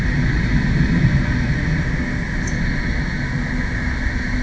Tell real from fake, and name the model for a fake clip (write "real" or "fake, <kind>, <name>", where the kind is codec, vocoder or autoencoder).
real